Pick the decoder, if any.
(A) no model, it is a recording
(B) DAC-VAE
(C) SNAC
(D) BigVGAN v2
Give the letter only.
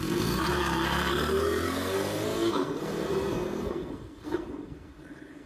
C